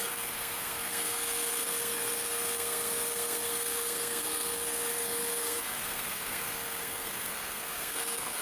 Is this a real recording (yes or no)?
no